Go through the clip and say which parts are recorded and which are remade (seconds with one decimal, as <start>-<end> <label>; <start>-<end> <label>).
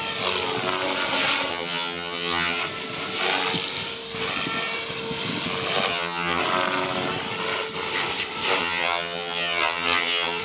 0.0-1.5 recorded; 1.5-2.6 remade; 2.6-5.9 recorded; 5.9-6.4 remade; 6.4-8.6 recorded; 8.6-10.4 remade